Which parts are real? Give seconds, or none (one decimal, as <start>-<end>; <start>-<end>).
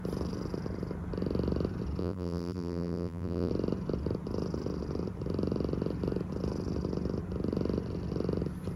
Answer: 0.0-2.0; 3.5-8.8